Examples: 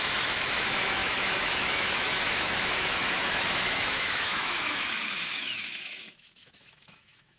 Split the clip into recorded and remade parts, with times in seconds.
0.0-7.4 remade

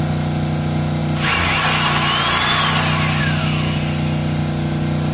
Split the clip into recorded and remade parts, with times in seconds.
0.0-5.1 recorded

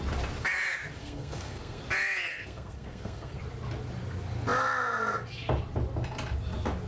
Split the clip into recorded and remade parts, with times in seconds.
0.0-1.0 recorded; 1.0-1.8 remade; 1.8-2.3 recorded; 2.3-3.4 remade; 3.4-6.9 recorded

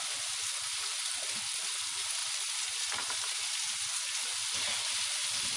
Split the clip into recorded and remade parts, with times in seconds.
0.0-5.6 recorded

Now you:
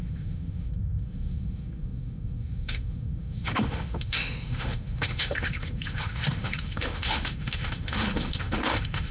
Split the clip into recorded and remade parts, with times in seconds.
0.0-9.1 remade